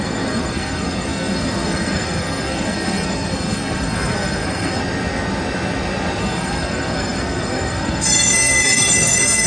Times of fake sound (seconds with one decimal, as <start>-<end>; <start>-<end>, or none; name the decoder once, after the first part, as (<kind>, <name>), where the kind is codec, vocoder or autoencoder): 0.0-4.8 (codec, SNAC); 6.2-9.5